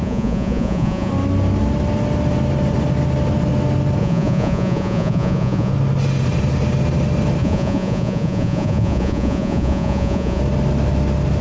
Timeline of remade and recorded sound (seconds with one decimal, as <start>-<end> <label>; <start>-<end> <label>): 0.0-1.1 remade; 1.1-4.0 recorded; 4.0-5.7 remade; 5.7-7.4 recorded; 7.4-10.4 remade; 10.4-11.4 recorded